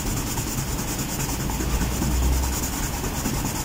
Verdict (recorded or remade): recorded